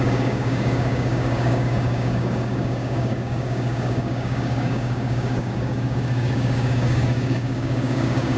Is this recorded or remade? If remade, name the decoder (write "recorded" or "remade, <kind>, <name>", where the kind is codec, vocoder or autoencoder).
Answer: remade, codec, DAC